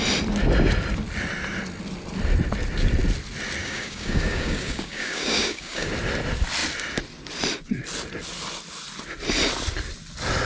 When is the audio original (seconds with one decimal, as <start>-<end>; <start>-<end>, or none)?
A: 0.0-3.6; 5.9-10.5